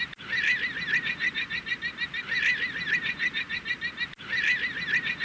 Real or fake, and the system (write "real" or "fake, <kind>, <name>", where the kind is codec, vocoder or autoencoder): real